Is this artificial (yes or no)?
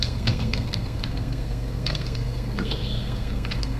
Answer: yes